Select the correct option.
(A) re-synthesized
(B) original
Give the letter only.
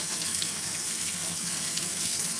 A